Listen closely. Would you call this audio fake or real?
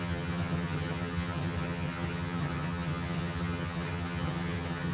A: fake